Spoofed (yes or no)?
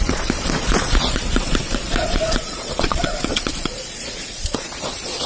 yes